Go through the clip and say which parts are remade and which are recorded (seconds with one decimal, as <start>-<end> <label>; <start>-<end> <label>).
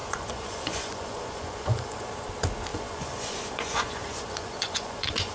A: 0.0-2.1 remade; 2.1-2.7 recorded; 2.7-5.3 remade